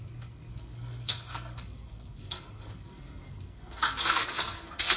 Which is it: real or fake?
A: fake